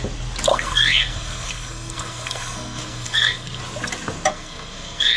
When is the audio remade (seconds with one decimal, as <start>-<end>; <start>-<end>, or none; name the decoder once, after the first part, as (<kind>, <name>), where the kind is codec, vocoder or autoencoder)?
0.5-3.6 (codec, SNAC); 4.3-5.2